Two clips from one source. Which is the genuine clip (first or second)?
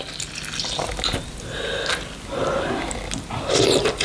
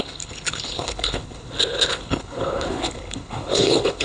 first